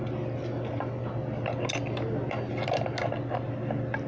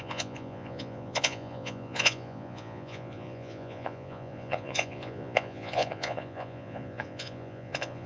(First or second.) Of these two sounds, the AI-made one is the second